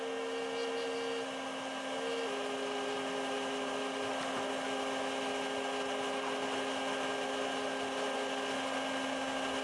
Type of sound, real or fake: real